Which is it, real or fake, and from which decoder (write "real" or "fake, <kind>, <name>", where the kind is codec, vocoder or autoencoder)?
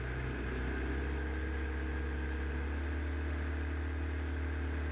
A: real